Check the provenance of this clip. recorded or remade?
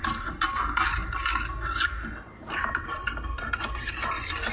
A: recorded